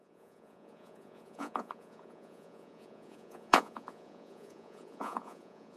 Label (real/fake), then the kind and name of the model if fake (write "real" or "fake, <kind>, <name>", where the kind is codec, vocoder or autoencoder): fake, vocoder, Vocos